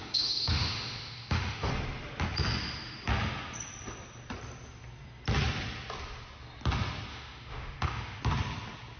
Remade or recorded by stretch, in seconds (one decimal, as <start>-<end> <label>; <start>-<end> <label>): 0.0-1.7 remade; 1.7-7.1 recorded; 7.1-8.2 remade; 8.2-9.0 recorded